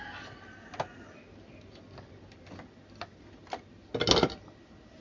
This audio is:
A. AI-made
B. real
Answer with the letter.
B